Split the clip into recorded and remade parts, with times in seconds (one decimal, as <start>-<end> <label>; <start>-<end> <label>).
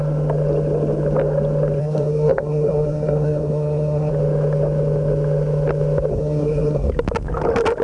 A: 0.0-1.8 recorded; 1.8-4.1 remade; 4.1-6.1 recorded; 6.1-6.9 remade; 6.9-7.8 recorded